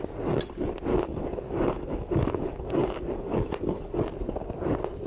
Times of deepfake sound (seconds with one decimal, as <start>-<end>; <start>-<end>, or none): 0.9-4.0